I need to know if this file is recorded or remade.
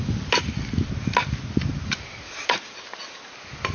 recorded